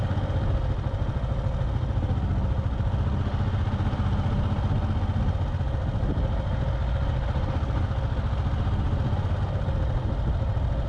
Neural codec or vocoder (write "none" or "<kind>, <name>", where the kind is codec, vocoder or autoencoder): none